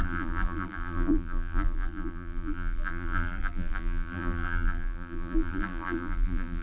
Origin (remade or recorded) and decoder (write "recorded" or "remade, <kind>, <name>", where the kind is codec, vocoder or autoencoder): remade, vocoder, BigVGAN v2